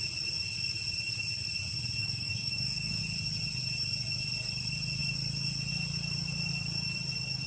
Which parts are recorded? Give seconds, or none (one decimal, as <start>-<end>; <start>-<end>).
0.0-2.0; 3.0-7.5